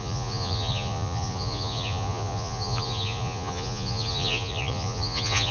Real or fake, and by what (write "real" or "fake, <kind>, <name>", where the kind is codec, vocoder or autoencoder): fake, vocoder, Vocos